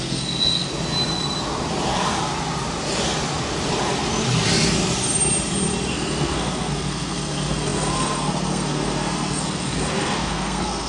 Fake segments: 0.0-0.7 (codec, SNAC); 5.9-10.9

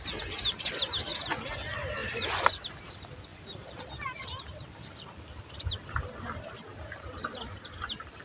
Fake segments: 2.0-2.5 (vocoder, BigVGAN v2); 3.3-3.8

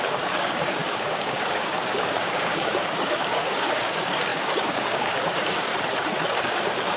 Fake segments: 0.0-5.7 (codec, DAC); 6.4-7.0

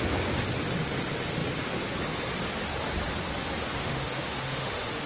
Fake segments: 3.8-5.1 (autoencoder, DAC-VAE)

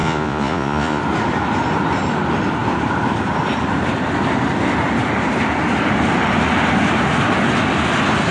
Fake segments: 0.0-1.0 (vocoder, Vocos)

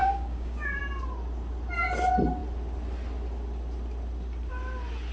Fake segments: 0.0-0.8 (codec, DAC)

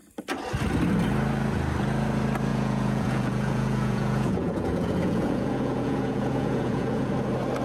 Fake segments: 2.5-7.1 (vocoder, Vocos)

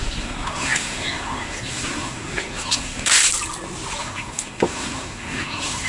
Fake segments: 0.0-3.2 (codec, SNAC); 4.0-5.9